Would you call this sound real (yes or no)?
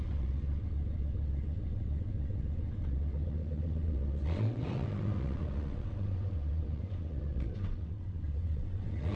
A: no